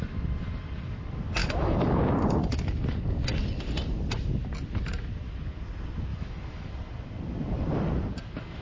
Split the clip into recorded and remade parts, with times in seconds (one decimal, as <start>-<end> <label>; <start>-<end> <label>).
0.0-1.4 recorded; 1.4-2.0 remade; 2.0-6.1 recorded; 6.1-6.7 remade; 6.7-8.6 recorded